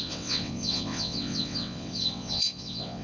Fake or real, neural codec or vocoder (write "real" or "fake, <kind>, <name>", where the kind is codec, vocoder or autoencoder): fake, vocoder, WaveNeXt